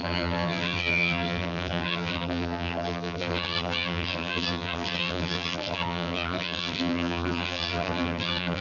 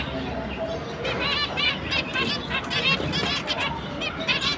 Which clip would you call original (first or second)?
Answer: second